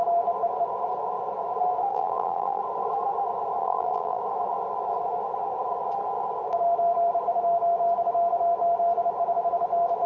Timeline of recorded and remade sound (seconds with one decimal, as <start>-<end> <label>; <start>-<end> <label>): 0.0-1.9 recorded; 1.9-2.6 remade; 2.6-3.6 recorded; 3.6-4.2 remade; 4.2-10.1 recorded